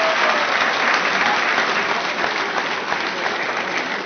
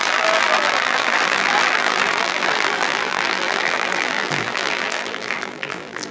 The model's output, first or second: second